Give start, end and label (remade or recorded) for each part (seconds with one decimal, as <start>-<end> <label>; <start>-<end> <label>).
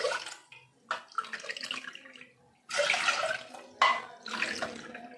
0.0-5.2 recorded